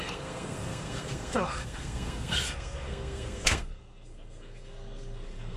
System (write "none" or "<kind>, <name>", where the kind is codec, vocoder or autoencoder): codec, SNAC